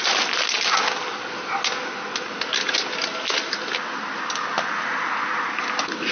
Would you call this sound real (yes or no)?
yes